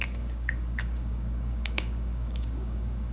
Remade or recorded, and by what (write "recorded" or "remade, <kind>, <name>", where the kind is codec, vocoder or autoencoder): remade, codec, DAC